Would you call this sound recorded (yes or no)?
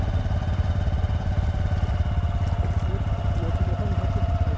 yes